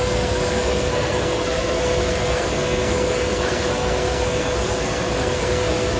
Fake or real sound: fake